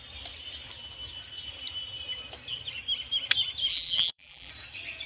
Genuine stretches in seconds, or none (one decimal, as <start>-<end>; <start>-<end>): 0.0-3.7; 4.5-5.1